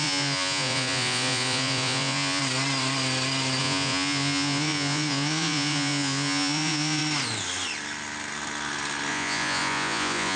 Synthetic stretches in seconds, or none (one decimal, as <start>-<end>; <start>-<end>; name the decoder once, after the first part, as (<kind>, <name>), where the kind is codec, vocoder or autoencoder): 0.0-2.4 (vocoder, Vocos); 3.6-7.0; 9.1-10.4